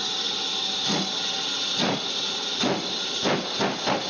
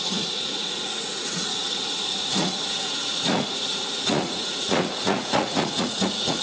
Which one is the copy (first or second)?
second